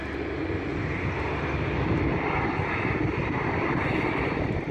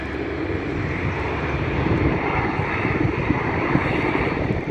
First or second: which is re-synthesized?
second